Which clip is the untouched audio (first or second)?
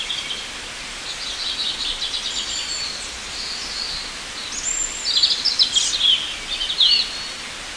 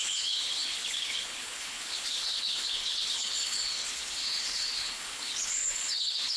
first